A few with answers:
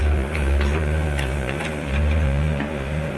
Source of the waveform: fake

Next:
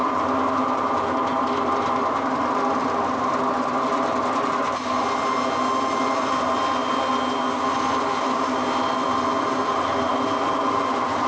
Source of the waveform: real